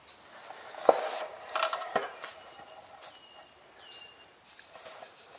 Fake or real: real